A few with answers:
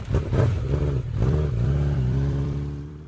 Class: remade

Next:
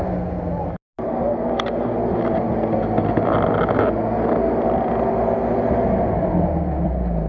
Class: recorded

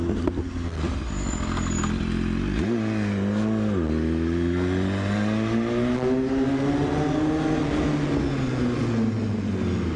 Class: recorded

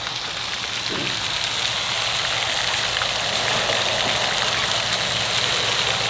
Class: recorded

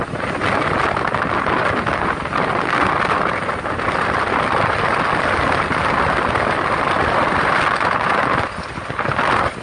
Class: recorded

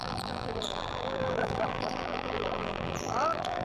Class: remade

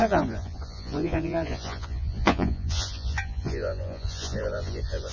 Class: remade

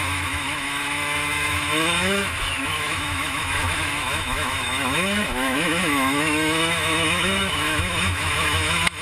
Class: remade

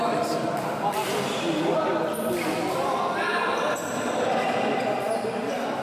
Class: remade